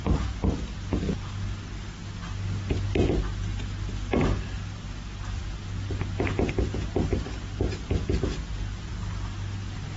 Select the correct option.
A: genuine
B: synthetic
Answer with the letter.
A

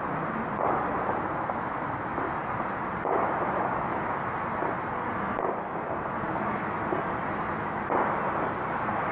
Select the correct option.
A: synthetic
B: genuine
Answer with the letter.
B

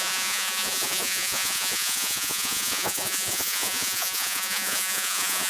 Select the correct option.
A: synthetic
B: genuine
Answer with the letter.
A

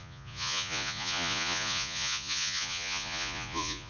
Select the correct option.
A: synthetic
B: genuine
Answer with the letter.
A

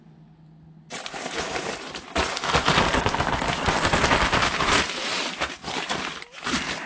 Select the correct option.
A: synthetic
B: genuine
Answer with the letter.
B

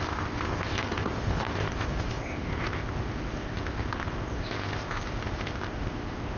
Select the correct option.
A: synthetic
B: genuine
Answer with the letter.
A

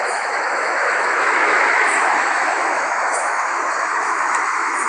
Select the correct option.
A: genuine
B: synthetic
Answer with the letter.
B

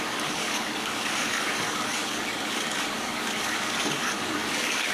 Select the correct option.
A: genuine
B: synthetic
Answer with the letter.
B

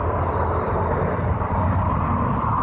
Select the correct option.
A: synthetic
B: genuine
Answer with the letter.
B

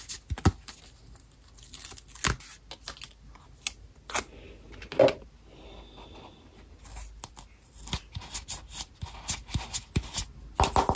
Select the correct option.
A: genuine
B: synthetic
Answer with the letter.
A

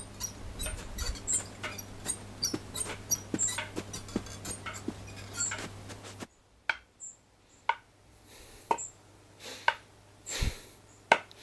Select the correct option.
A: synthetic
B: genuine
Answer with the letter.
B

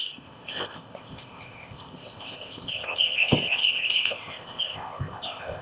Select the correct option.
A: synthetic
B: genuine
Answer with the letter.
A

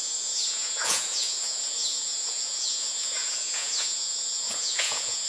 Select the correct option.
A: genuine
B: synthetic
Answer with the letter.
B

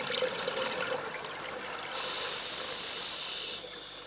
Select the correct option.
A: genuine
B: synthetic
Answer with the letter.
A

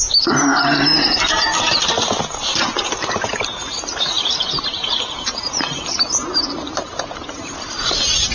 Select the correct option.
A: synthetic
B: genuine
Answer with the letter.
A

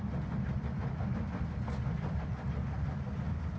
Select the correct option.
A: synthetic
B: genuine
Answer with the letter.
B